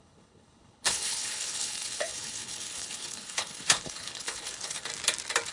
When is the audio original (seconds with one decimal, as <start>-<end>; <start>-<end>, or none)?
4.9-5.5